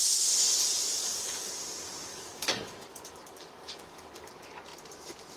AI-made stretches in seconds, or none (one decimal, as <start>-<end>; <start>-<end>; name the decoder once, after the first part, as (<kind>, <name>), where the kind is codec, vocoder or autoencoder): 1.0-1.5 (codec, DAC); 2.1-4.3